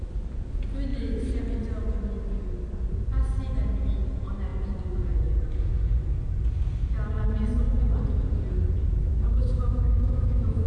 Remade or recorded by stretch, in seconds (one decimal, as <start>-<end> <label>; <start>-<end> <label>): 0.0-9.0 recorded; 9.0-10.7 remade